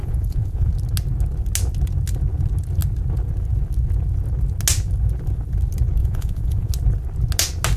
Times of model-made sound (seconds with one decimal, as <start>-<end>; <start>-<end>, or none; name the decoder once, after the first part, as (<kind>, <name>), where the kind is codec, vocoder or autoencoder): 0.0-0.7 (vocoder, Vocos); 6.0-6.7